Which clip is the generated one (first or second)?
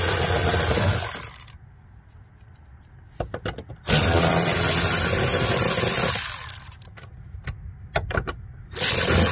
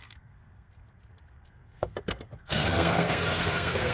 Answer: second